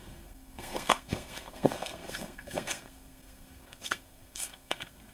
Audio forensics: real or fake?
fake